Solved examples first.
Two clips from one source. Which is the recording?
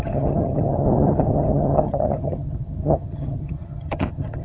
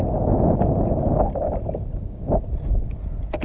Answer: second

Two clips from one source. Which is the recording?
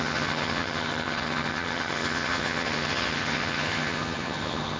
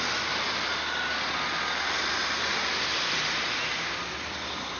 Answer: second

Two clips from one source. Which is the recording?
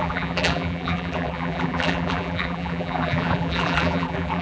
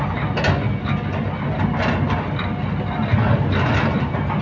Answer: second